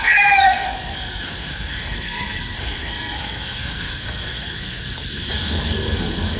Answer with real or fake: fake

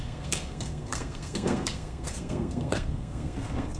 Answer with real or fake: fake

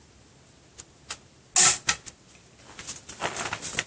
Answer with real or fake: real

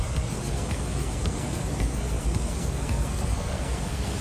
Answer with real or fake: fake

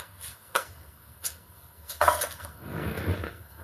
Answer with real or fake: fake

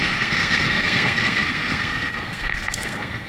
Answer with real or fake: fake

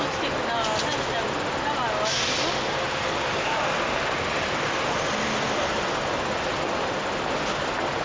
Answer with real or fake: real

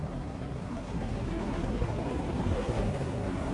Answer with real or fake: fake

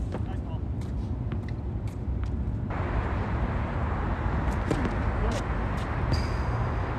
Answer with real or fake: real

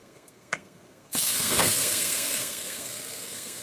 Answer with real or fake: fake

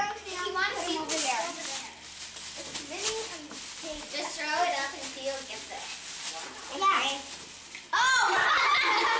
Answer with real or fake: real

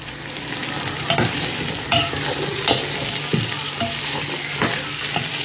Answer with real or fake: real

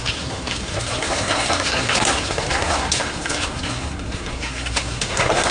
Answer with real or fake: fake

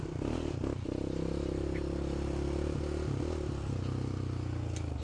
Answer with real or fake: real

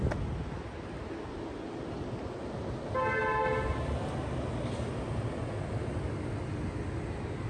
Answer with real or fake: real